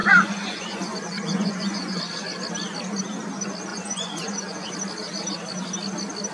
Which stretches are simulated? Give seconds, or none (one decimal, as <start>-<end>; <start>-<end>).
0.0-2.0; 3.7-4.7